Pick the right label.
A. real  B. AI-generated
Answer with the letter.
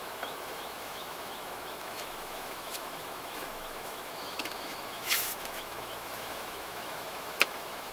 B